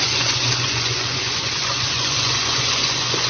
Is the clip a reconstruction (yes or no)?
yes